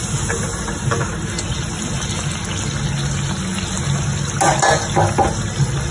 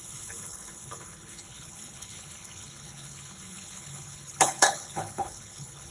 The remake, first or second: second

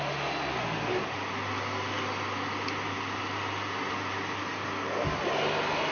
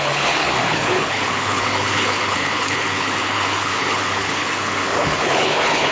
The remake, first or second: second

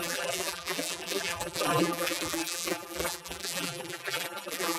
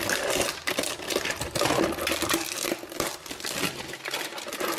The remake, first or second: first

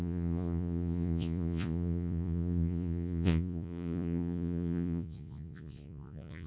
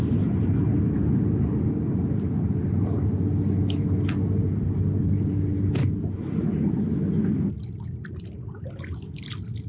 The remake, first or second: first